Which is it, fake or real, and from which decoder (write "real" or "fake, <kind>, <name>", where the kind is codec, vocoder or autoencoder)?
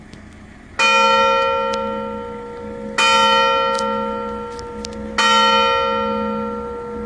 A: real